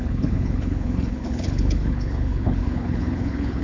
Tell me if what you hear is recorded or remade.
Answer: remade